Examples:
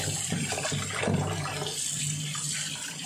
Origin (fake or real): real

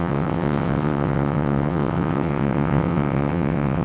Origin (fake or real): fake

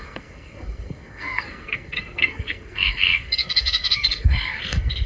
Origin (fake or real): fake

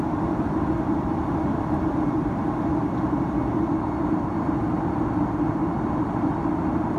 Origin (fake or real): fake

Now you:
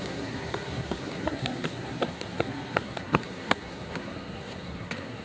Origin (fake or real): fake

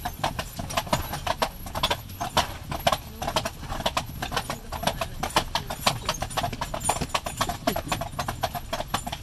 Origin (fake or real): real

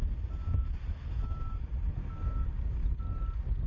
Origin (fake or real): real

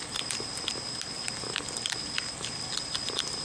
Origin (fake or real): real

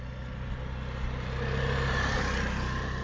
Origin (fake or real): real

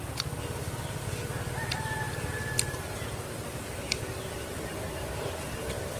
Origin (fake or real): real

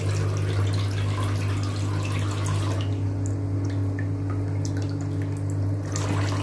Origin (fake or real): real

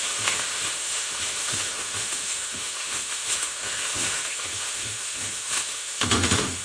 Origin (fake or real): fake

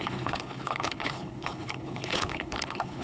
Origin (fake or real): fake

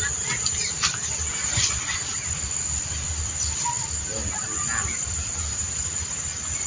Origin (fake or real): real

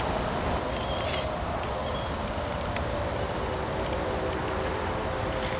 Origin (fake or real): real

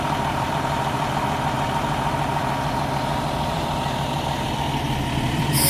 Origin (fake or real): fake